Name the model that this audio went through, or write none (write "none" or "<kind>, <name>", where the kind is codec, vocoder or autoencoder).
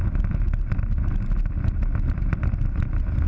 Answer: none